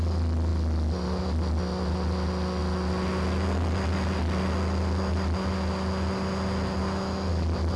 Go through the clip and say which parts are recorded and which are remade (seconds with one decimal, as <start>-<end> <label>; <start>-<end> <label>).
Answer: 0.0-7.8 recorded